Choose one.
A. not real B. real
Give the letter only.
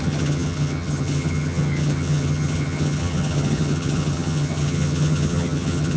A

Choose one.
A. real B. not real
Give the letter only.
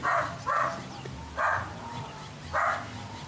A